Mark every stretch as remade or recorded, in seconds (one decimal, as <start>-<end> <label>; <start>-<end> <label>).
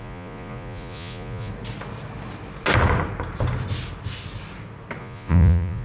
0.0-1.5 remade; 1.5-5.0 recorded; 5.0-5.8 remade